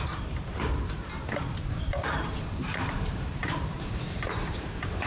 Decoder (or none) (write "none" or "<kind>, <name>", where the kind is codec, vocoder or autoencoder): vocoder, BigVGAN v2